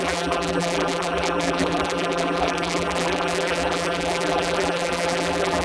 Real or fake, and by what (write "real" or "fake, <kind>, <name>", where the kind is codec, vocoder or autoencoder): fake, vocoder, BigVGAN v2